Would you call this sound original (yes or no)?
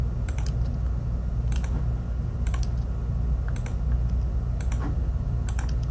yes